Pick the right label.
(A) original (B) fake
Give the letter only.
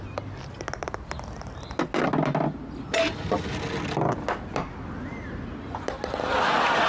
A